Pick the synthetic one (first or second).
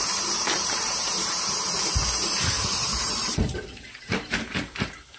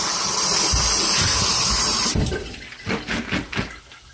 first